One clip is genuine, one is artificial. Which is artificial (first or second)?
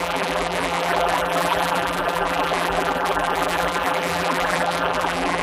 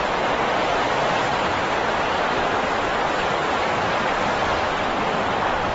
first